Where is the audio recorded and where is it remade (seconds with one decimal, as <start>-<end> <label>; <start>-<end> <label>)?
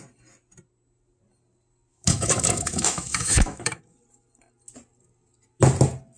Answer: 0.0-1.9 recorded; 1.9-3.8 remade; 3.8-6.2 recorded